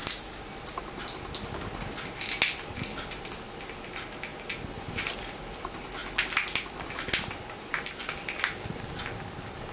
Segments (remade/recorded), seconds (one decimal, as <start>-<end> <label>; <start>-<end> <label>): 0.0-1.0 remade; 1.0-9.7 recorded